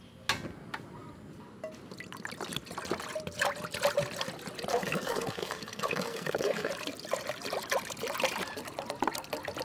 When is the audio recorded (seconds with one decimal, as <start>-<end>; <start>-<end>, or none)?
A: 0.0-4.7; 6.7-9.6